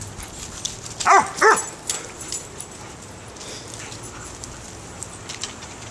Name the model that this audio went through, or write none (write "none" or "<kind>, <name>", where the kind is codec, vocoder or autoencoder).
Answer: none